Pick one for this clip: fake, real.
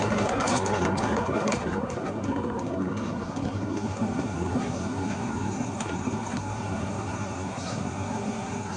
fake